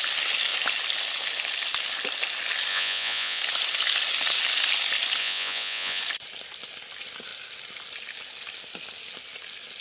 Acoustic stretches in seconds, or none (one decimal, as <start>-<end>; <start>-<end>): 0.0-2.7; 3.4-5.2; 6.0-9.8